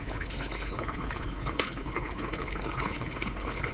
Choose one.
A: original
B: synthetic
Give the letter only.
B